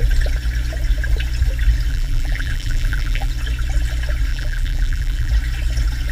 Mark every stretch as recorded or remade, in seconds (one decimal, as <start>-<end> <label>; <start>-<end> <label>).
0.0-1.9 recorded; 1.9-3.3 remade; 3.3-4.3 recorded; 4.3-5.3 remade; 5.3-6.1 recorded